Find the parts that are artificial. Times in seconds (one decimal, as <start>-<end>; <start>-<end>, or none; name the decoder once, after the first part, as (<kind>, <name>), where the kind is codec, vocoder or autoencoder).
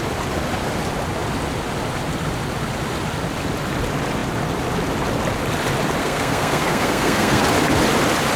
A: 6.0-7.4 (codec, SNAC)